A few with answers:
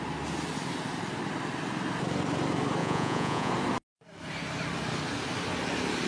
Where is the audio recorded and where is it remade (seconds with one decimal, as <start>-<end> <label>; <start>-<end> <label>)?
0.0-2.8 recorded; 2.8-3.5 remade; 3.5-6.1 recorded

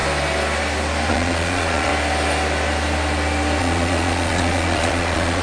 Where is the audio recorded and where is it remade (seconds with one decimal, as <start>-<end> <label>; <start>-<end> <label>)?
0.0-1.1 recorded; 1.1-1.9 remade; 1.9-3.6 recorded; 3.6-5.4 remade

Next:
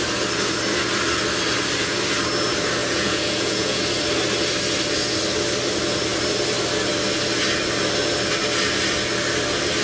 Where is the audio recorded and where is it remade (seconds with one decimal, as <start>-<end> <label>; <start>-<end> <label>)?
0.0-2.8 recorded; 2.8-3.8 remade; 3.8-9.8 recorded